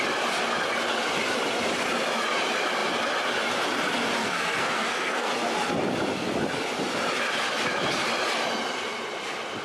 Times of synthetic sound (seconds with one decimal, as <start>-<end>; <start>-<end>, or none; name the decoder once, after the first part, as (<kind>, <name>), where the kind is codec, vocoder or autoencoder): 4.2-5.3 (codec, SNAC)